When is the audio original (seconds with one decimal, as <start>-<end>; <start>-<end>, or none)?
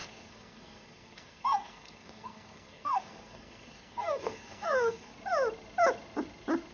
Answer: 5.1-6.7